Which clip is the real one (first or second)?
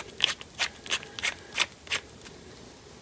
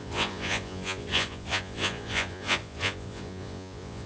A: first